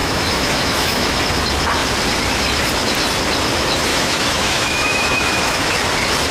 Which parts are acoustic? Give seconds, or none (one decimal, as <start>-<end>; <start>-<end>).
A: 1.2-3.9; 5.7-6.3